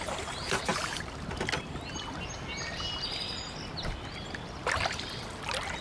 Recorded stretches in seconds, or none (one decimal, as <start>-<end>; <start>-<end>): 0.0-5.8